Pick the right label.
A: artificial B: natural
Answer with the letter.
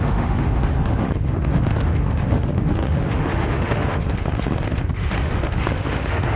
A